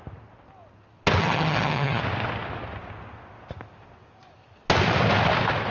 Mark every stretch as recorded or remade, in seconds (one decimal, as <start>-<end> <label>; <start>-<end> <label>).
0.0-1.2 recorded; 1.2-2.0 remade; 2.0-5.7 recorded